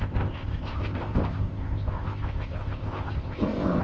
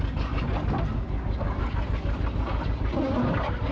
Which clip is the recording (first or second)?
second